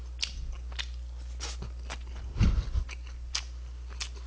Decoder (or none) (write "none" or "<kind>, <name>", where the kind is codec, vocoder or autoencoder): none